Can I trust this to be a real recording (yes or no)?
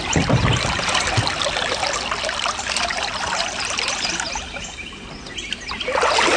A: yes